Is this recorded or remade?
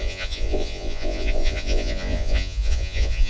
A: remade